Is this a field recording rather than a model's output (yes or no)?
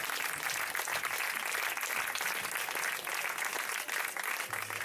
yes